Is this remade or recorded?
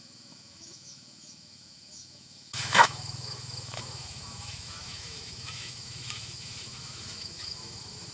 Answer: remade